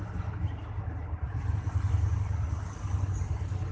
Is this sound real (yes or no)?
yes